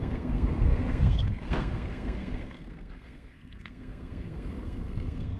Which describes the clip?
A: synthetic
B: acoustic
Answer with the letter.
A